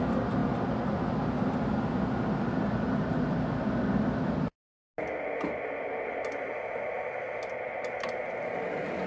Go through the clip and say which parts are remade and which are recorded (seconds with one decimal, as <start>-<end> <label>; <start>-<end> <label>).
0.0-9.1 recorded